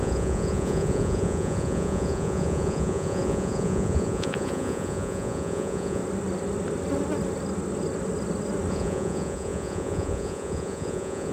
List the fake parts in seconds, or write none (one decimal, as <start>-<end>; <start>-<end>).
0.0-6.0; 8.7-11.3